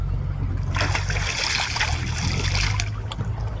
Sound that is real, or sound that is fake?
real